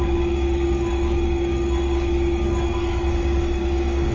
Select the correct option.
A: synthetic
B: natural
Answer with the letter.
A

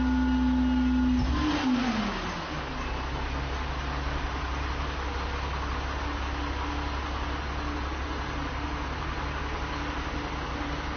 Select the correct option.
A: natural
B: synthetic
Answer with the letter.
A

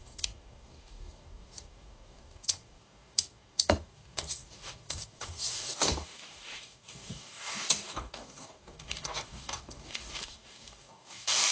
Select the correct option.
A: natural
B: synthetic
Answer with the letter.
B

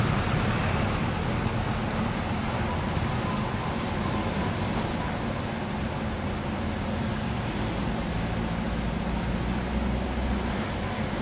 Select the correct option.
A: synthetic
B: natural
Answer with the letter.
B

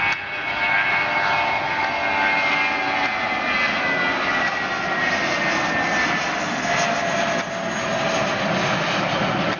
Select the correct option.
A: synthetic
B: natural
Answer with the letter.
B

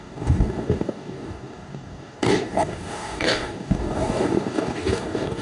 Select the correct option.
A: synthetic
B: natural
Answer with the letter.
A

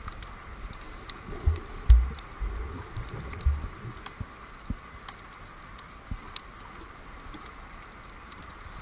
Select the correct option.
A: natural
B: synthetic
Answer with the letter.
A